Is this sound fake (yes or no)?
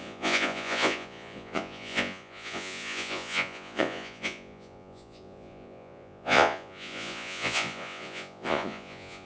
yes